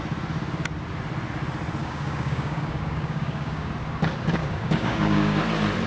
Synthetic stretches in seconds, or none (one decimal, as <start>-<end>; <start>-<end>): 1.8-3.7; 4.4-5.4